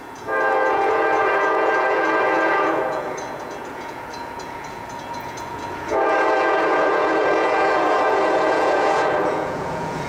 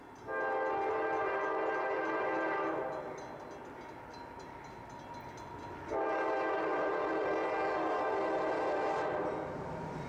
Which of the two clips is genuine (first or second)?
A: second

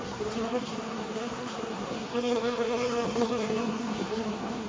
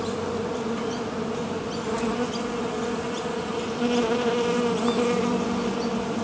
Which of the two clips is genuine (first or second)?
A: second